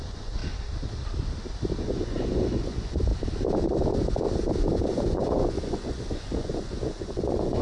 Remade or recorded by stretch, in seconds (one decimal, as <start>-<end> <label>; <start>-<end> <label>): 0.0-0.4 remade; 0.4-1.8 recorded; 1.8-3.1 remade; 3.1-4.9 recorded; 4.9-7.6 remade